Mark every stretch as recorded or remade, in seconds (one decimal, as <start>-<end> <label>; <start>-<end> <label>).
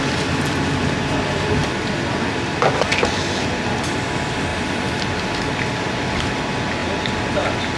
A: 0.0-7.8 recorded